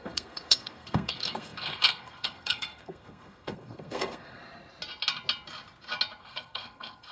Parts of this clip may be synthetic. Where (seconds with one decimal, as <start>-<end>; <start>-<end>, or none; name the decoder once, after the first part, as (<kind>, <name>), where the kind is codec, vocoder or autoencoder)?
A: 0.0-4.4 (codec, SNAC); 6.2-7.1

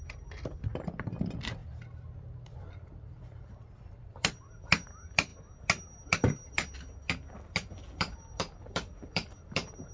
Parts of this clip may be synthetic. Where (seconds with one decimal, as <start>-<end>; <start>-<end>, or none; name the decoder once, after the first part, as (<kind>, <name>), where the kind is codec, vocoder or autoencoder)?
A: 0.0-1.6 (vocoder, BigVGAN v2); 2.2-5.3; 8.0-9.9

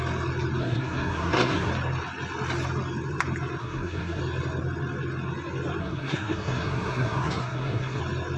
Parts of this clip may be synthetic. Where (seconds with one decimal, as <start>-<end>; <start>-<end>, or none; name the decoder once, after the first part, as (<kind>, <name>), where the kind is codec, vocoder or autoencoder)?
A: 0.6-1.7 (codec, SNAC); 3.6-4.2; 5.8-8.0

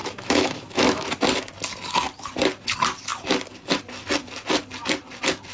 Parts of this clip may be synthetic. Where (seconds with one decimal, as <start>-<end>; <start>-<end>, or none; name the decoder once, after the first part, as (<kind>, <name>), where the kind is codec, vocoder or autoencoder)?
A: 0.0-1.1 (autoencoder, DAC-VAE)

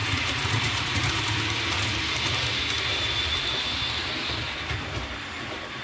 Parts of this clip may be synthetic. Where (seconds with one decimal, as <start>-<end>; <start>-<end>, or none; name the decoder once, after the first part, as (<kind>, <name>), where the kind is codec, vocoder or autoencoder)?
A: 0.0-1.0 (vocoder, Vocos)

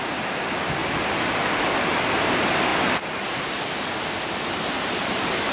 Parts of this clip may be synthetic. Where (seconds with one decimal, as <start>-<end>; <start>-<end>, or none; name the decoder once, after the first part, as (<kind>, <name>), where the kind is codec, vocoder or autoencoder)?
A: none

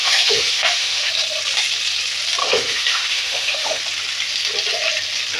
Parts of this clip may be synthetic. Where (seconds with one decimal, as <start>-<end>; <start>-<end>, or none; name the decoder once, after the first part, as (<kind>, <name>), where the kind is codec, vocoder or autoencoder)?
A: 0.0-1.1 (autoencoder, DAC-VAE); 2.4-3.8

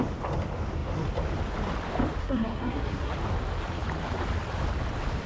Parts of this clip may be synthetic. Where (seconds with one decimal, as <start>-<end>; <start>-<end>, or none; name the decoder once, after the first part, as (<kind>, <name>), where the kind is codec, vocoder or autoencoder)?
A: 2.2-3.1 (codec, SNAC)